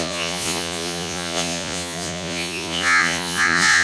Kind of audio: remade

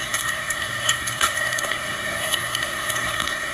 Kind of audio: remade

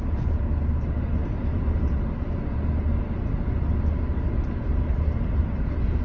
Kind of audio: recorded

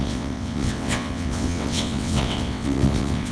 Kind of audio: remade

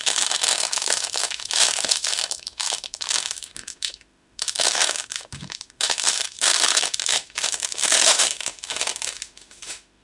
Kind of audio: remade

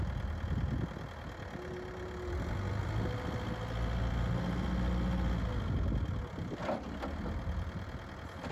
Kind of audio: recorded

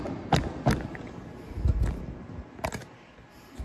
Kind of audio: recorded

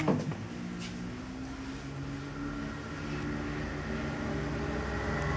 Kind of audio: recorded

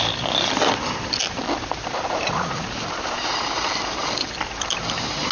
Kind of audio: recorded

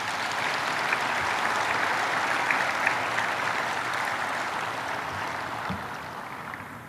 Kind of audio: recorded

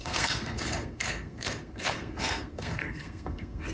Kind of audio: remade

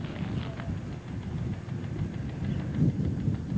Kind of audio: recorded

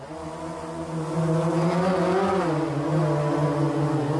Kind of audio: recorded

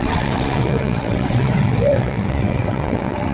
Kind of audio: remade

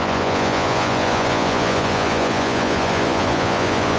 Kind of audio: remade